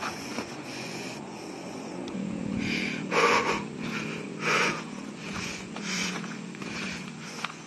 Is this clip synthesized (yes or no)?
yes